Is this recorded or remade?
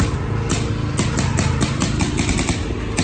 recorded